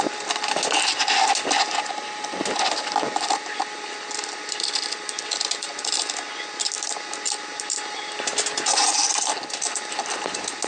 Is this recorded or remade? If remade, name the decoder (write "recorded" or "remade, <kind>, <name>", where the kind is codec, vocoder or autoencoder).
recorded